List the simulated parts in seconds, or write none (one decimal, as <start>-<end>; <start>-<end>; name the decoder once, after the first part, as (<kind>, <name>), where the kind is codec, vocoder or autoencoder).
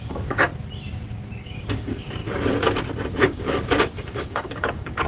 0.0-0.5 (codec, DAC); 1.4-2.2; 3.2-5.1